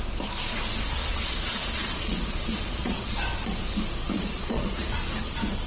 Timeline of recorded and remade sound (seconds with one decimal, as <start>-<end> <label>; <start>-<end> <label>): 0.0-1.0 recorded; 1.0-3.1 remade; 3.1-4.1 recorded; 4.1-4.9 remade; 4.9-5.7 recorded